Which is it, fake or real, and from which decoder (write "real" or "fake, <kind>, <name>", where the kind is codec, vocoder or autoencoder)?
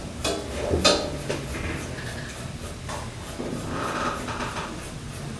real